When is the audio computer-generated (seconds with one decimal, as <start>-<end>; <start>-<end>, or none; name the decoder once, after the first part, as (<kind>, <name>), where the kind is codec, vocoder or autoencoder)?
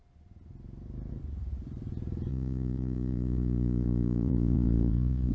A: 2.3-5.3 (vocoder, Vocos)